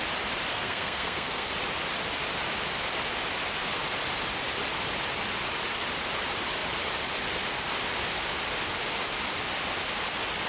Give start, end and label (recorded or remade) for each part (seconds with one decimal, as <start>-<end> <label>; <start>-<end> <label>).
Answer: 0.0-0.5 recorded; 0.5-1.5 remade; 1.5-10.5 recorded